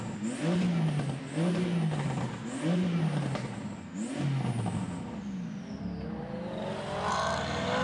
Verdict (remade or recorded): recorded